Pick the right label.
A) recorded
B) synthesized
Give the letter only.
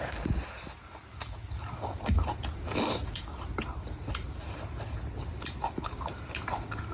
A